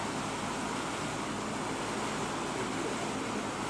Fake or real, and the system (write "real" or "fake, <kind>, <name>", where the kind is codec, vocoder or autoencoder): real